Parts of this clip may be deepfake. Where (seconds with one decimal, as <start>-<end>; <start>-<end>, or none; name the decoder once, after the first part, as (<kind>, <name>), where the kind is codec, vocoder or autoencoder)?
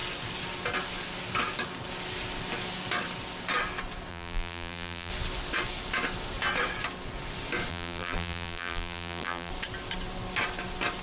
4.1-5.1 (vocoder, BigVGAN v2); 7.7-9.5